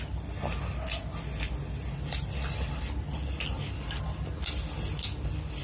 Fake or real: real